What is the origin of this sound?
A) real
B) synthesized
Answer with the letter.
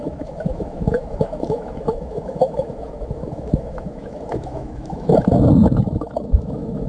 B